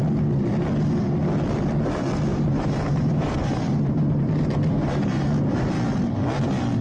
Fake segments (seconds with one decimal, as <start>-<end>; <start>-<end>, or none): 2.3-5.7